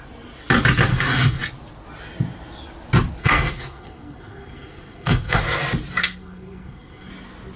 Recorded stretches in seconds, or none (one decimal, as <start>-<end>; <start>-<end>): 0.0-0.9; 1.4-3.2; 5.4-6.0; 7.1-7.6